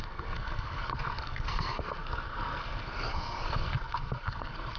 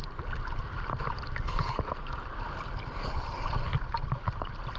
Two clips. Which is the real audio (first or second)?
second